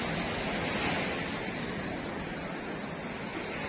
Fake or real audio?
real